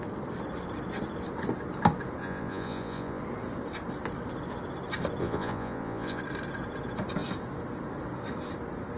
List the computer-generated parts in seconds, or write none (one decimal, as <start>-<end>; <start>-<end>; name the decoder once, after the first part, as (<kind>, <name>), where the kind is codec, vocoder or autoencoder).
2.2-3.2 (vocoder, Vocos); 5.2-6.2